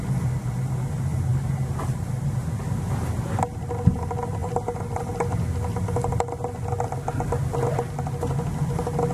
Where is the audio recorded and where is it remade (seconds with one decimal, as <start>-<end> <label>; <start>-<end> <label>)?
0.0-1.3 recorded; 1.3-2.6 remade; 2.6-9.1 recorded